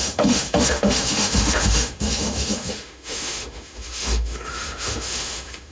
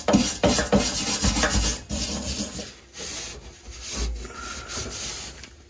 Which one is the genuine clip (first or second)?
second